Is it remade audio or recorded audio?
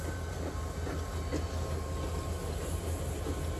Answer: recorded